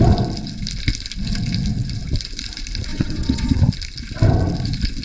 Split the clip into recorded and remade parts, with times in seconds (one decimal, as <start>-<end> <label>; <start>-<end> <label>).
0.0-2.9 recorded; 2.9-3.6 remade; 3.6-5.0 recorded